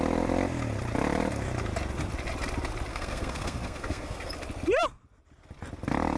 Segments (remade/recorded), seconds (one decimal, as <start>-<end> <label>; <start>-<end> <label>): 0.0-2.9 recorded; 2.9-4.3 remade; 4.3-6.2 recorded